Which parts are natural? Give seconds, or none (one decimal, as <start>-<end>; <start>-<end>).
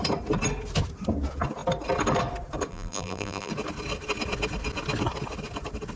0.0-2.7; 3.5-6.0